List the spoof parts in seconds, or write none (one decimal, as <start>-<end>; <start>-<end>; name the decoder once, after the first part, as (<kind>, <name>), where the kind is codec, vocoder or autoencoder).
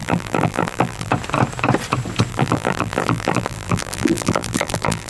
0.0-1.1 (vocoder, BigVGAN v2); 2.3-5.1